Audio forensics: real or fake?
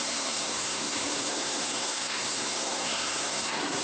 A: fake